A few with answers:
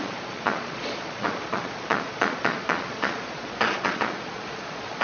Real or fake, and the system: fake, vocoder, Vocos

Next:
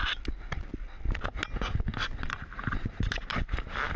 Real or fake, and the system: real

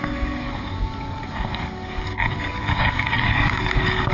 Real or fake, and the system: fake, codec, DAC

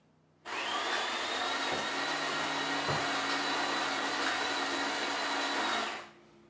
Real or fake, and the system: real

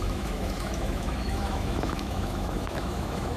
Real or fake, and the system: fake, autoencoder, DAC-VAE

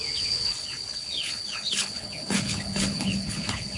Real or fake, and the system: fake, codec, HILCodec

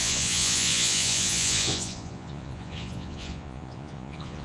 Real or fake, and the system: fake, vocoder, Vocos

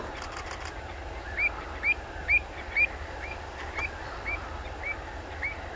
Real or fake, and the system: real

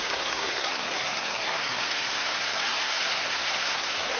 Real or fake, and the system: fake, codec, SNAC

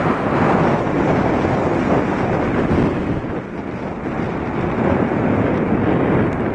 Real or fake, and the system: real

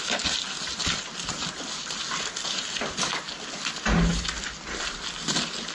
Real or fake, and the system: real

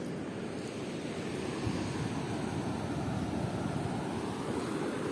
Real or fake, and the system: real